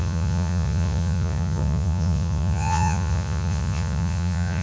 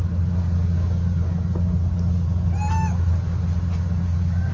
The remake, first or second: first